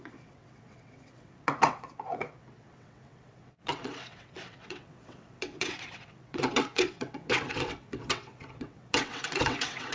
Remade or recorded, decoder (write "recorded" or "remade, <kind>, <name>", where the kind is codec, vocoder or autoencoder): remade, vocoder, WaveNeXt